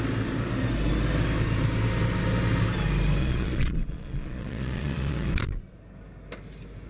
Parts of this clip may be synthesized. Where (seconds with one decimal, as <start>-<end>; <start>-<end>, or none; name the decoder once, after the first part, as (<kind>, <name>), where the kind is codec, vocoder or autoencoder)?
3.2-5.3 (vocoder, Vocos)